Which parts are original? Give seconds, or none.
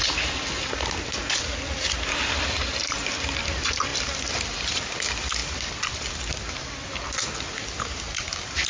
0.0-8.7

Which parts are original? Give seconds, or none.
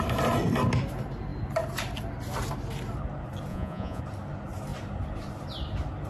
0.0-3.5; 4.0-6.1